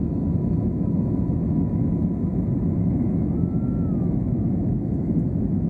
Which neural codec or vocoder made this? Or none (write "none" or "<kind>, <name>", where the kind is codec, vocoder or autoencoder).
autoencoder, DAC-VAE